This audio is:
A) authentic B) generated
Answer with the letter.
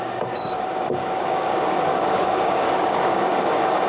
B